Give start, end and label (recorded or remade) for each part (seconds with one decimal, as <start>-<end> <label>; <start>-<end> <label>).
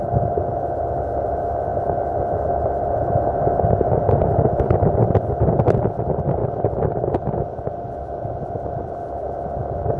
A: 0.0-10.0 recorded